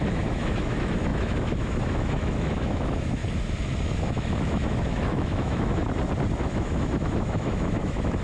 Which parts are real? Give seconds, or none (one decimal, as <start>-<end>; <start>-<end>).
3.2-4.0; 5.8-6.4